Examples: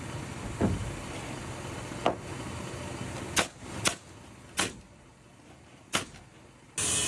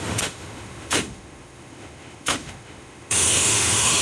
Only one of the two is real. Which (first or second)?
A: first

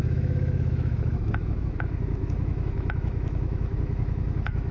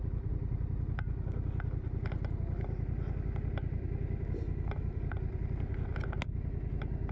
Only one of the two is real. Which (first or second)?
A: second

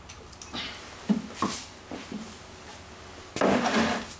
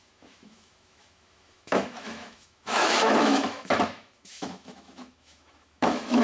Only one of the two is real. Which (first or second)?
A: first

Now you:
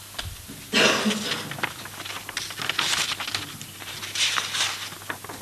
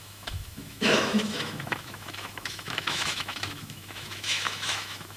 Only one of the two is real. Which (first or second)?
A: first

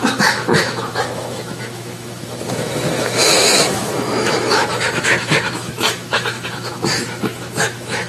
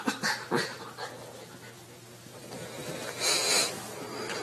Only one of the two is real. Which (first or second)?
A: second